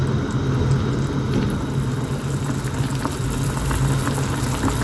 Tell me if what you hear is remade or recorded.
recorded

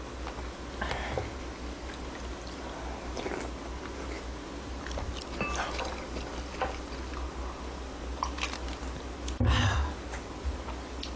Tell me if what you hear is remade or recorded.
recorded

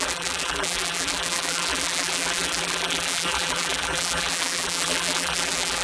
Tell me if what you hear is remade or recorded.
remade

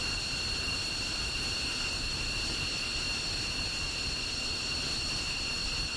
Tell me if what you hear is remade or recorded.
recorded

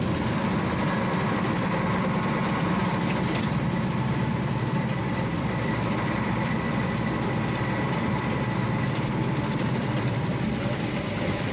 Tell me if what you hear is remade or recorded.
remade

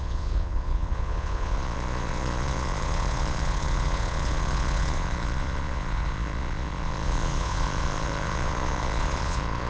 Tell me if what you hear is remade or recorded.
remade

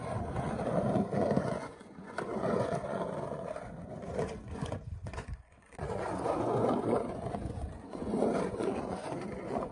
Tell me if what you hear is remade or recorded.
remade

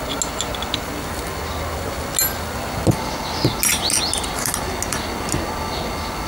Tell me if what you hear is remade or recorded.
recorded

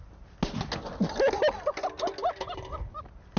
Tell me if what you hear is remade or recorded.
recorded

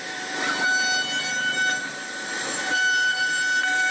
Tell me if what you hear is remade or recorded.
remade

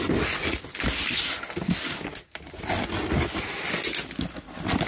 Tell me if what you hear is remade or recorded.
recorded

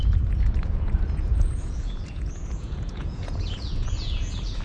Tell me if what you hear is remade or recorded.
remade